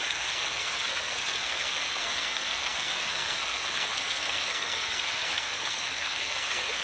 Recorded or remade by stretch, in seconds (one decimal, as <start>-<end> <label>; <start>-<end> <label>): 0.0-6.8 remade

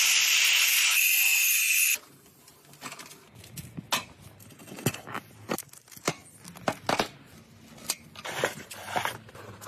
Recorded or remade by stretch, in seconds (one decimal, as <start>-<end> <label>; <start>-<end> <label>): 0.0-9.7 recorded